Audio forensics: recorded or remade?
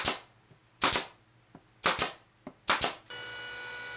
recorded